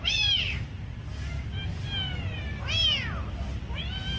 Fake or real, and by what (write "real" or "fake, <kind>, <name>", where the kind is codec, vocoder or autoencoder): real